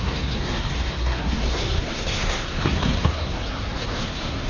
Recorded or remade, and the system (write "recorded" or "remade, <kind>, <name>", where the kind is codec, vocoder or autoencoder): remade, codec, SNAC